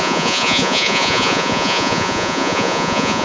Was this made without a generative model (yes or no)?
no